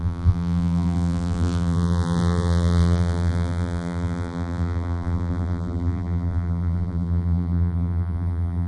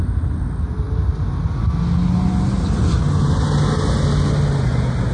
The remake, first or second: first